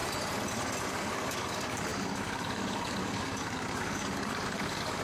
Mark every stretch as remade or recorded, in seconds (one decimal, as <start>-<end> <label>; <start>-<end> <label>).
0.0-0.9 recorded; 0.9-5.0 remade